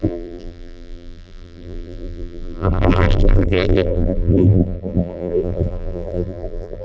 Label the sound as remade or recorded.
remade